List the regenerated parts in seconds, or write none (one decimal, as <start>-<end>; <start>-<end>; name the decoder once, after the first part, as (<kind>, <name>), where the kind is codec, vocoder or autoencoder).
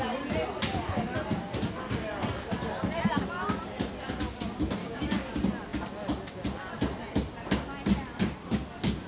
4.8-5.3 (codec, DAC)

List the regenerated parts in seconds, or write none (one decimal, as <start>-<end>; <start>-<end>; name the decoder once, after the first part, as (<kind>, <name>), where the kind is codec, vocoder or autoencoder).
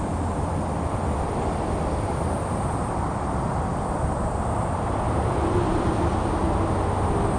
none